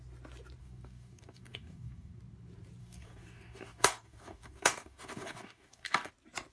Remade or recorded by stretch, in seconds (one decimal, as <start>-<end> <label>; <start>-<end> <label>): 0.0-0.6 recorded; 0.6-2.1 remade; 2.1-2.8 recorded; 2.8-6.1 remade; 6.1-6.5 recorded